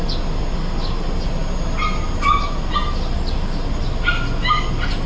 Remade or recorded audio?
recorded